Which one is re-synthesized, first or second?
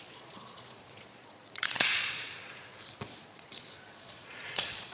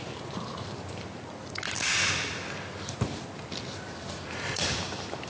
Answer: first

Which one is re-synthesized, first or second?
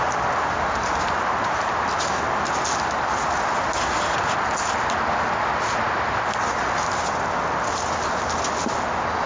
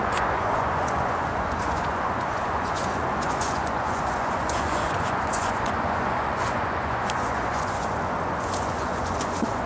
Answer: second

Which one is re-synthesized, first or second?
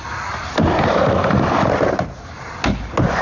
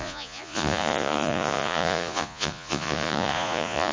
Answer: second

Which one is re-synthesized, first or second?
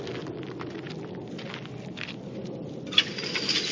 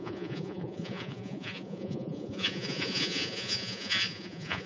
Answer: second